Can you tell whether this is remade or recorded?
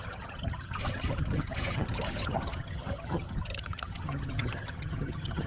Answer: remade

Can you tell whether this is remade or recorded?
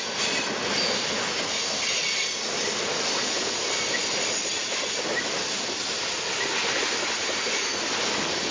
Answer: recorded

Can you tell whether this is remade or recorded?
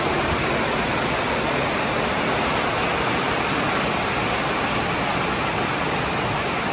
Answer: recorded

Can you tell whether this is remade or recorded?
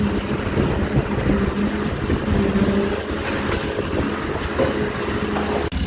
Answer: recorded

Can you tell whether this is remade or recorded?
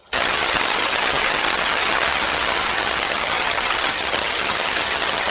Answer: remade